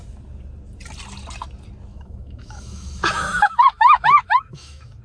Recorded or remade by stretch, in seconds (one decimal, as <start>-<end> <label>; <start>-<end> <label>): 0.0-1.9 recorded; 1.9-5.0 remade

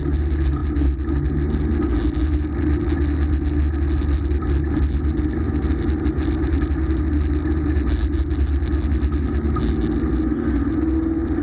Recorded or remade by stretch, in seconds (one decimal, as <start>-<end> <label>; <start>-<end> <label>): 0.0-11.4 recorded